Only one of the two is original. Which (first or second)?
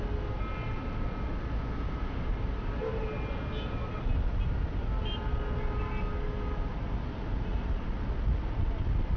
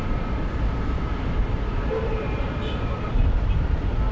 first